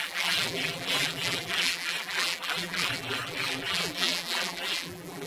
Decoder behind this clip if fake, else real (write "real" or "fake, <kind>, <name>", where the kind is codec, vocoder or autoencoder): fake, vocoder, BigVGAN v2